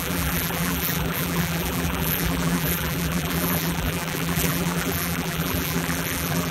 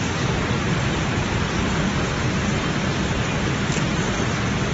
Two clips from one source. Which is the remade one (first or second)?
first